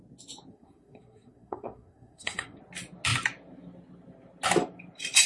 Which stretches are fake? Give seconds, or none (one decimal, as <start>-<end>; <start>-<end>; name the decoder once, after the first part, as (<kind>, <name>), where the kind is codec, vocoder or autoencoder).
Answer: 0.5-2.6 (codec, SNAC)